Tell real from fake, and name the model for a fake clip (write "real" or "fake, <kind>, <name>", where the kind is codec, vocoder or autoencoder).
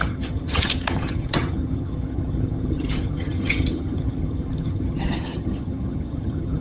fake, vocoder, HiFi-GAN